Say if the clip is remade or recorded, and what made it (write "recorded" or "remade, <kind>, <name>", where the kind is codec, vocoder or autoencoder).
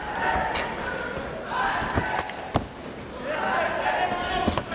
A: recorded